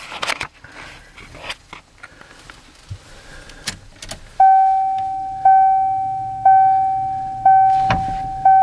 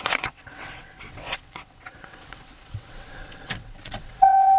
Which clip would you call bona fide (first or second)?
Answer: first